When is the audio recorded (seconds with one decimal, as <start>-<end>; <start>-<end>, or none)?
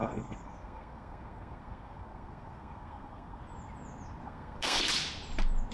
3.4-4.2; 4.8-5.7